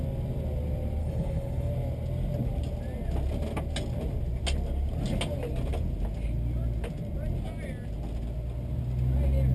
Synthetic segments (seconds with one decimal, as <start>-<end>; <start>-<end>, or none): 1.0-1.7